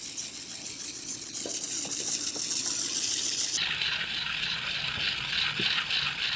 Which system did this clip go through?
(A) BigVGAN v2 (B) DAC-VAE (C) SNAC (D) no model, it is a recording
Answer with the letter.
D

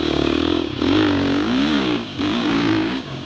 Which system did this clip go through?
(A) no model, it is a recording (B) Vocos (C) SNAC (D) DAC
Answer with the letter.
D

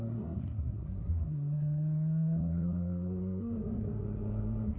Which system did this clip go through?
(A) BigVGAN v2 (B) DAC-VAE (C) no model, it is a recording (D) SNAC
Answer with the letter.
D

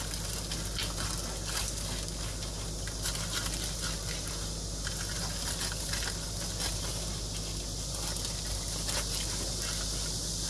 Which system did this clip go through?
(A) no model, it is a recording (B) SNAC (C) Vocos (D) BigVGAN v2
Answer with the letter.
A